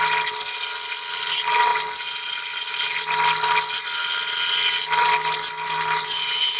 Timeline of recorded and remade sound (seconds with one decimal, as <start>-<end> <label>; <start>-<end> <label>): 0.0-6.6 recorded